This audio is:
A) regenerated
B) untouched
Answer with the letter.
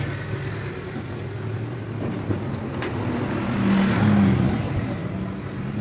B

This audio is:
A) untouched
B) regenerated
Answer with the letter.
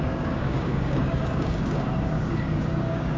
B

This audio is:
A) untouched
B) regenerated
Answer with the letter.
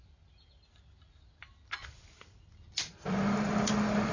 A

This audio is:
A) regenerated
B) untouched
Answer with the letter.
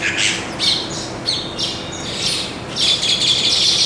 B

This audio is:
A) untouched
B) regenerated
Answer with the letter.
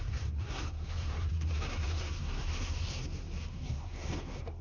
B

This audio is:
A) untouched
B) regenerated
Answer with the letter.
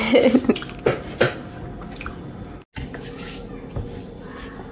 A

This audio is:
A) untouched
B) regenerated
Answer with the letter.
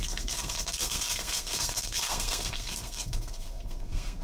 B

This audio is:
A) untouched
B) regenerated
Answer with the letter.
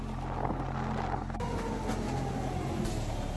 A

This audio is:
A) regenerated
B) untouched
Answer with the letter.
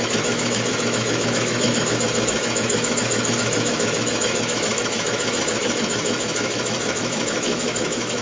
A